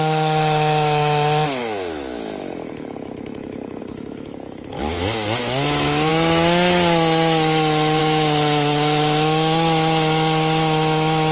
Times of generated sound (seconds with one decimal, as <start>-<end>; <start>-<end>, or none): 0.0-11.3